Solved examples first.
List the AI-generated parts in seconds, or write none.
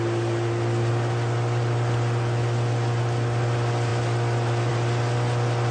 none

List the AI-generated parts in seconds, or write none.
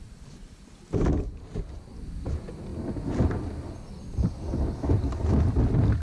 none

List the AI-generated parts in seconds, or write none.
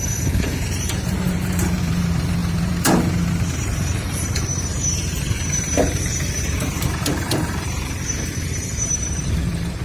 0.0-9.8 (vocoder, BigVGAN v2)